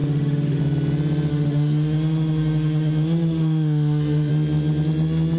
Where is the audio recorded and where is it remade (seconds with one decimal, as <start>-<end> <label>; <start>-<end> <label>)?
0.0-0.6 remade; 0.6-1.3 recorded; 1.3-4.3 remade; 4.3-5.4 recorded